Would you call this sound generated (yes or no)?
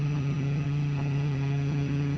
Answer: yes